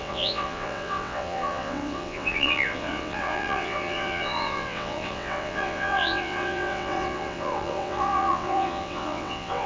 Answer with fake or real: fake